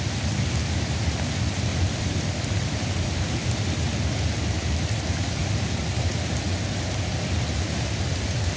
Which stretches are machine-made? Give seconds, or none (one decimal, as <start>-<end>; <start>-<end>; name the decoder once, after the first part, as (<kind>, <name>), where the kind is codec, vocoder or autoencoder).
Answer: 1.7-3.8 (vocoder, BigVGAN v2)